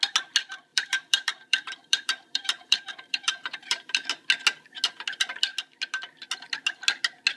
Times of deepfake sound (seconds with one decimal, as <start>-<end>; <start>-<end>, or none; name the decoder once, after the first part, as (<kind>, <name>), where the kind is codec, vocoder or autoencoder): 0.7-4.1 (vocoder, BigVGAN v2)